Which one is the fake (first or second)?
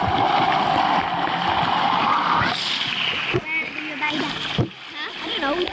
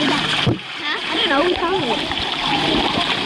second